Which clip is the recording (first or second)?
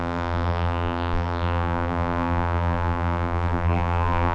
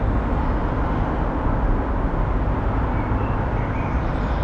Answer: second